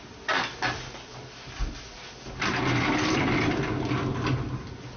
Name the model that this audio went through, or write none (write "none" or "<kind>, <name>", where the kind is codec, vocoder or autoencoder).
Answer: none